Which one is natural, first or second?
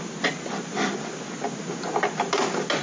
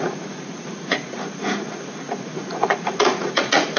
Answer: first